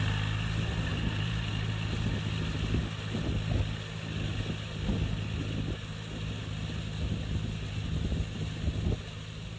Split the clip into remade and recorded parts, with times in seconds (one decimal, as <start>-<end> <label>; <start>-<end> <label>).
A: 0.0-0.9 recorded; 0.9-1.5 remade; 1.5-9.6 recorded